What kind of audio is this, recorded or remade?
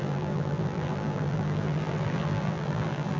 remade